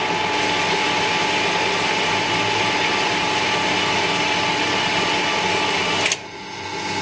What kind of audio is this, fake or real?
real